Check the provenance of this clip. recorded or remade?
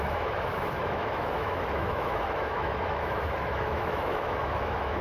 remade